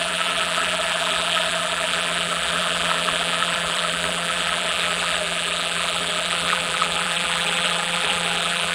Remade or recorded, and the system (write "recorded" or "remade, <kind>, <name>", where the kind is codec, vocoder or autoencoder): remade, vocoder, BigVGAN v2